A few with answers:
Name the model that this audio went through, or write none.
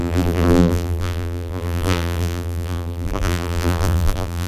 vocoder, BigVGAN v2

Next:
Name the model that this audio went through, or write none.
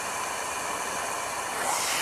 none